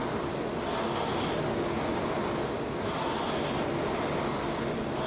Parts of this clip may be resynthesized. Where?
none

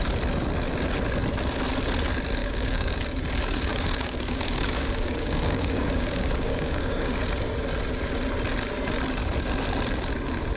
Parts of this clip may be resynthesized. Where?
2.4-3.0; 3.7-7.2

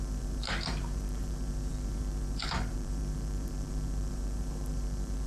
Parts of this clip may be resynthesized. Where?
0.0-5.3

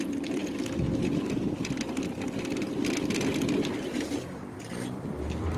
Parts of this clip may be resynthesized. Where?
none

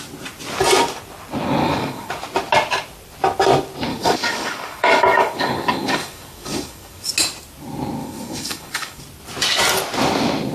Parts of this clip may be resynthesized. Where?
1.6-2.1; 3.9-7.1; 8.0-9.0

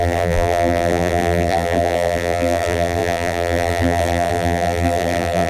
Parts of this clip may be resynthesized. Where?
0.0-5.5